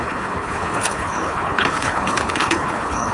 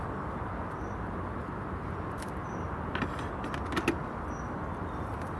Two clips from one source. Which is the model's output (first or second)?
first